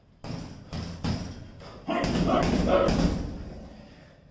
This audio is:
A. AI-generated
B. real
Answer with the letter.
B